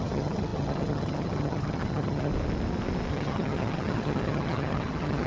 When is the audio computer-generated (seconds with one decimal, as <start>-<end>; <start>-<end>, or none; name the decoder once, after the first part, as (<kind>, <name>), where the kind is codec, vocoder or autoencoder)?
0.0-2.3 (vocoder, HiFi-GAN); 3.1-5.3